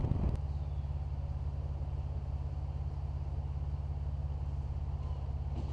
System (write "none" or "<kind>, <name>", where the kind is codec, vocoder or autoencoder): none